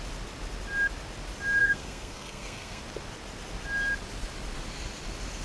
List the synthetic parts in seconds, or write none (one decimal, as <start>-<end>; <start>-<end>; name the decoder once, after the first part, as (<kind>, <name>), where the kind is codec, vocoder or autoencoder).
1.6-2.8 (codec, SNAC)